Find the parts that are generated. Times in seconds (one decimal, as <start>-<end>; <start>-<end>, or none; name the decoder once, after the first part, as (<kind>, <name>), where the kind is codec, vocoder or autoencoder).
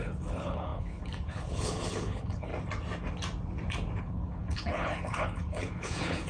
0.0-2.5 (codec, HILCodec); 4.0-6.3